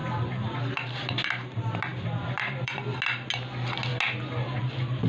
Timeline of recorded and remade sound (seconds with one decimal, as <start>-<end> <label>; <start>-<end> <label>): 0.0-0.5 remade; 0.5-1.9 recorded; 1.9-3.0 remade; 3.0-5.1 recorded